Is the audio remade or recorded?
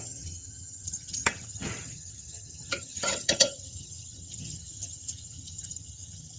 remade